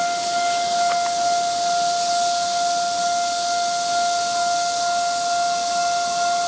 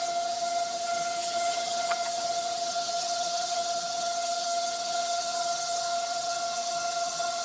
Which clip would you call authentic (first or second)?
first